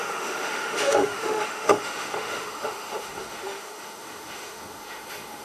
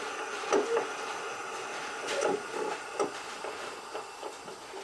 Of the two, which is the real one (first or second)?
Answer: second